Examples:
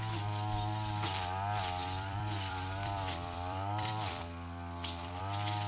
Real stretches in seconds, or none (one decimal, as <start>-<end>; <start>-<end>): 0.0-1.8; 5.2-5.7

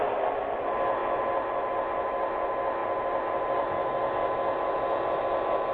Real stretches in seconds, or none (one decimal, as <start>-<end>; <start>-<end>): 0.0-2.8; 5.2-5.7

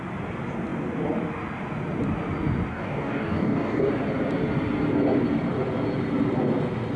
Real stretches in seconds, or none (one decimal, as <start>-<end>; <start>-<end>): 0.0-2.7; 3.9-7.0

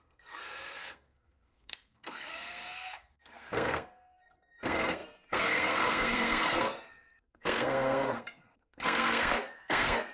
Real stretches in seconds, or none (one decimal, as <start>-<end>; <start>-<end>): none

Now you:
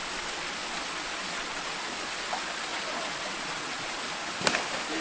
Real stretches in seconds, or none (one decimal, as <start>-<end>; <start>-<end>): 0.0-1.2; 1.9-2.7; 3.9-5.0

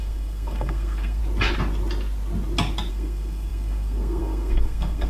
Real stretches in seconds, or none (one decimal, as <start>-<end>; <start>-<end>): 1.2-2.9

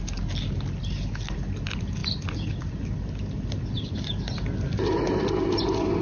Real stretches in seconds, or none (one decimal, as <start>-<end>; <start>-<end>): 0.0-6.0

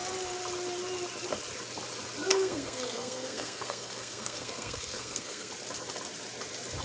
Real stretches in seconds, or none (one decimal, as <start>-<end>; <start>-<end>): 0.0-2.3; 5.5-6.8